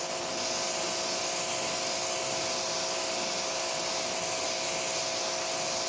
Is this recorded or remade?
recorded